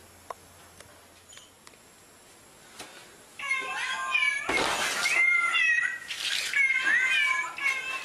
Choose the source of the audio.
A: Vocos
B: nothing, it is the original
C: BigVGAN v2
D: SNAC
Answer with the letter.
B